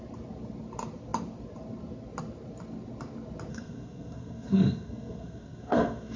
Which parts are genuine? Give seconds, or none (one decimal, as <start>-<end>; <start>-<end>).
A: 0.0-3.5